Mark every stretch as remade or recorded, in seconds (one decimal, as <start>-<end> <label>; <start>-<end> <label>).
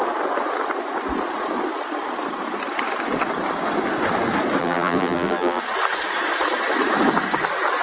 0.0-4.6 recorded; 4.6-5.6 remade; 5.6-7.8 recorded